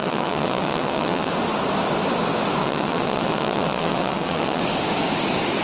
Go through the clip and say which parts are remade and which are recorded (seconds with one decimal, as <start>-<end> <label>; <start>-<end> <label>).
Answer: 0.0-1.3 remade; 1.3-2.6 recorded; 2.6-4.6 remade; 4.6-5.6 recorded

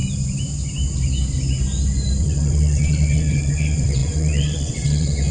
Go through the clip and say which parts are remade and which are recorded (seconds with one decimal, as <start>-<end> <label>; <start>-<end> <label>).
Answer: 0.0-2.2 recorded; 2.2-5.3 remade

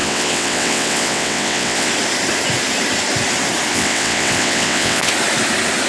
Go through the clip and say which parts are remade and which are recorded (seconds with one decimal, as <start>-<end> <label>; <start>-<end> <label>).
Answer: 0.0-1.9 remade; 1.9-3.7 recorded; 3.7-5.1 remade; 5.1-5.9 recorded